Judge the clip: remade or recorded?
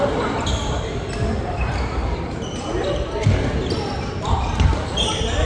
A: remade